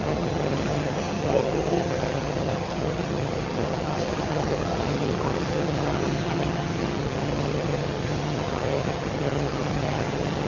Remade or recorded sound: remade